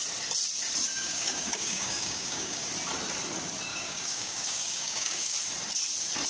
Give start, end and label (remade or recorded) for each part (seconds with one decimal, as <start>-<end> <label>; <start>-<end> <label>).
0.0-0.9 recorded; 0.9-2.7 remade; 2.7-3.7 recorded; 3.7-5.4 remade; 5.4-6.3 recorded